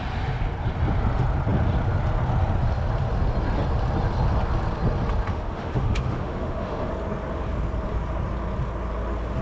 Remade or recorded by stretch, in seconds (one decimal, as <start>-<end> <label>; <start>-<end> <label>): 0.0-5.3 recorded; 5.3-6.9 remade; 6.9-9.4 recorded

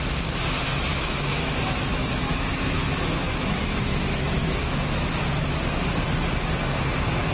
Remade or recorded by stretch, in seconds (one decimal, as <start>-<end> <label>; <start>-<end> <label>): 0.0-0.9 recorded; 0.9-1.5 remade; 1.5-1.9 recorded; 1.9-5.2 remade; 5.2-7.3 recorded

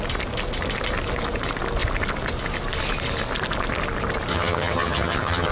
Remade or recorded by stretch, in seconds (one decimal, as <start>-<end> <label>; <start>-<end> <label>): 0.0-4.3 recorded; 4.3-5.5 remade